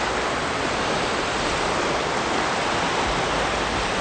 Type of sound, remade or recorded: recorded